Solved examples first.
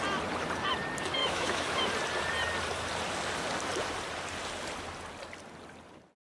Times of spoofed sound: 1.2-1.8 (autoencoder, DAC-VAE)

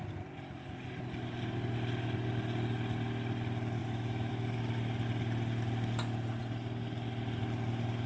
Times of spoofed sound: 3.8-4.3 (autoencoder, DAC-VAE)

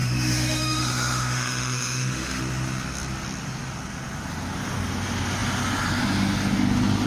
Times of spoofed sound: 0.0-2.4 (autoencoder, DAC-VAE)